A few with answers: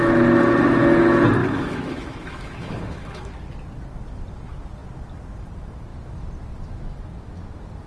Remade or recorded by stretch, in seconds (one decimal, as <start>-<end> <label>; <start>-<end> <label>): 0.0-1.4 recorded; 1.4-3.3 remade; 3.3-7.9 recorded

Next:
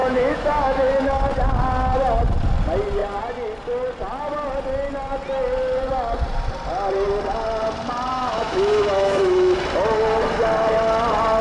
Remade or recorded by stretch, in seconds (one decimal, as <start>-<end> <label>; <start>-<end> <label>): 0.0-0.9 remade; 0.9-8.1 recorded; 8.1-9.6 remade; 9.6-11.4 recorded

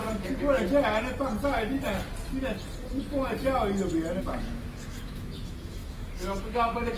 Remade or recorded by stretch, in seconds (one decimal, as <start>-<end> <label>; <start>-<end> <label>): 0.0-4.2 recorded; 4.2-7.0 remade

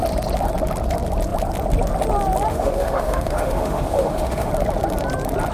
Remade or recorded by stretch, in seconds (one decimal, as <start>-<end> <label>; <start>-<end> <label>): 0.0-2.5 recorded; 2.5-4.5 remade; 4.5-5.5 recorded